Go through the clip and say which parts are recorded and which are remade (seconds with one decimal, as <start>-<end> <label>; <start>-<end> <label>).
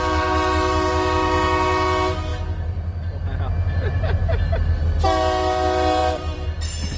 0.0-6.0 recorded; 6.0-6.6 remade; 6.6-7.0 recorded